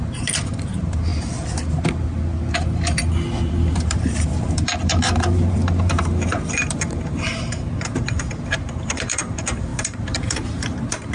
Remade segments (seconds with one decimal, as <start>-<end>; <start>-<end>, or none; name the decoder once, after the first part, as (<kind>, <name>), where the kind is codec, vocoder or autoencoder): 0.0-1.1 (vocoder, BigVGAN v2); 3.5-11.1